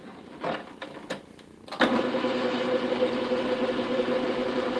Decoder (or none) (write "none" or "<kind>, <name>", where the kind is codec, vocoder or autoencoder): none